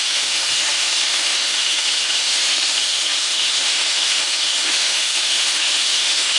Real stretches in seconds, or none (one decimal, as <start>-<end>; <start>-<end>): none